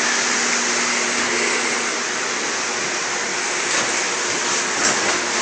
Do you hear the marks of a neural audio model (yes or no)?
no